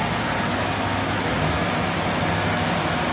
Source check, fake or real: real